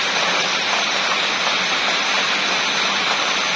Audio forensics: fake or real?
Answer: real